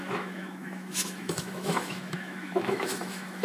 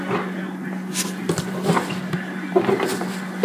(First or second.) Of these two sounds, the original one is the second